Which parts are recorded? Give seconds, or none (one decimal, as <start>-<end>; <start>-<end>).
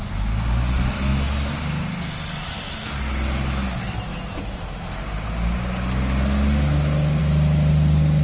0.0-8.2